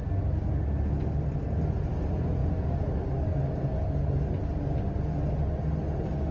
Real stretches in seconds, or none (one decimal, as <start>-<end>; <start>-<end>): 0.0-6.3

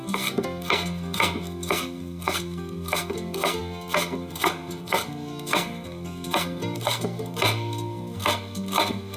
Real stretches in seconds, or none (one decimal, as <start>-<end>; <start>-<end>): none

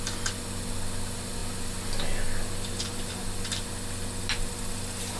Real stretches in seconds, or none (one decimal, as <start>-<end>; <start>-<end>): 0.0-5.2

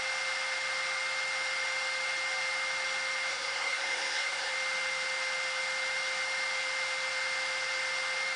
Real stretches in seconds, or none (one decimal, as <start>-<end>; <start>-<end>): 0.0-3.3; 4.5-8.4

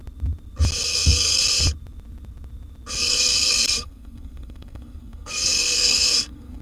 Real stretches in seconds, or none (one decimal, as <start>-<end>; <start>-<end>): 0.0-0.9; 1.4-3.0

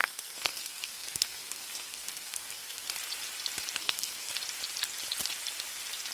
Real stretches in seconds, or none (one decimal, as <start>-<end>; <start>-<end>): 2.9-3.8; 4.3-6.1

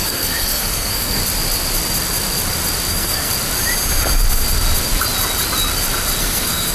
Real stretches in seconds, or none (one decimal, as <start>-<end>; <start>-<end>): 1.2-2.9; 3.3-6.2